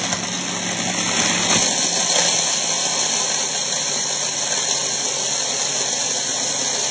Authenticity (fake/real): real